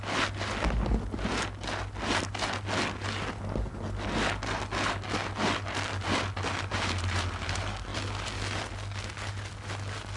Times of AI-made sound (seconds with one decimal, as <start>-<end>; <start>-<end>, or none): none